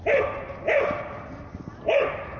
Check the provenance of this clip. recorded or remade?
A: recorded